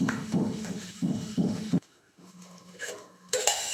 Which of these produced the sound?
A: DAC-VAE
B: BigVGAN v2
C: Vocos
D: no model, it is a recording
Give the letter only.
A